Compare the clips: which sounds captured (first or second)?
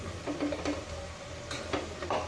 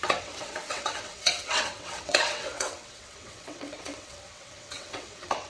first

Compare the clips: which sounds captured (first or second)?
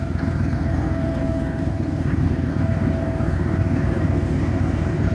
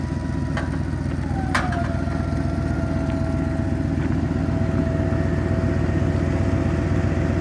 second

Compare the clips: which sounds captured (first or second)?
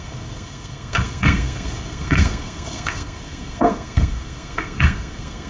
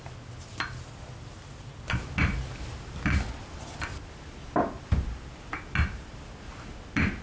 second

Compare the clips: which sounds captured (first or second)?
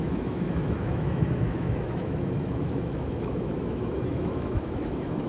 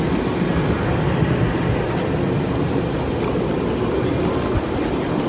second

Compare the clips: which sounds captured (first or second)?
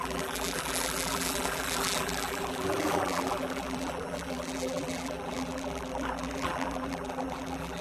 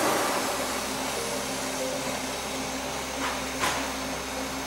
second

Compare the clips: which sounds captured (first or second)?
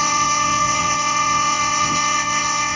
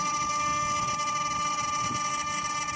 second